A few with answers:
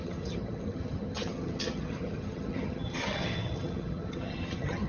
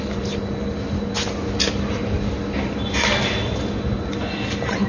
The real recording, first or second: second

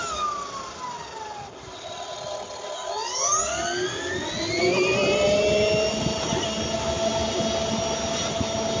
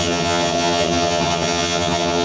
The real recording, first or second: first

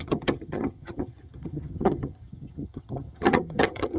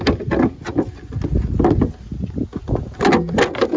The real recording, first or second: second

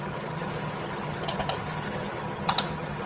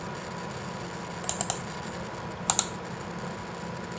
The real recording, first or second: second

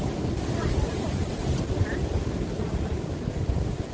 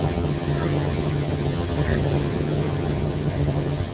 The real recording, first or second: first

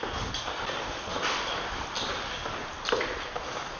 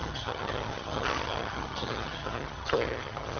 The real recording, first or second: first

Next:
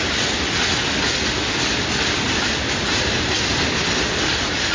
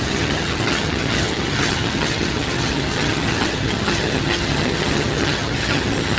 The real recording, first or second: first